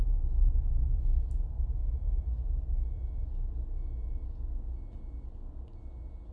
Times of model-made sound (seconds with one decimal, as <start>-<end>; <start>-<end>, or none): none